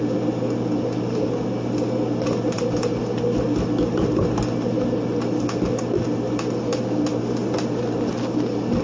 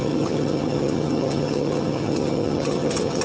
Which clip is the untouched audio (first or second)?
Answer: first